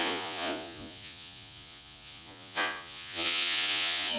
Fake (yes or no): yes